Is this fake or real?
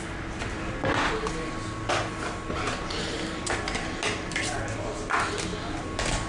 real